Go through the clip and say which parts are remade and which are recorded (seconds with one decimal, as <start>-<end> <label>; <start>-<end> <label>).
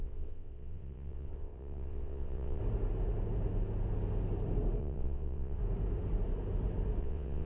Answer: 0.0-2.6 remade; 2.6-4.8 recorded; 4.8-5.6 remade; 5.6-7.0 recorded; 7.0-7.5 remade